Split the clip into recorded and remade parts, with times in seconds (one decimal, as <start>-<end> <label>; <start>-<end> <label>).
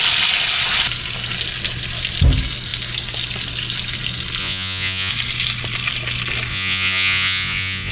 0.0-4.4 recorded; 4.4-5.1 remade; 5.1-6.5 recorded; 6.5-7.9 remade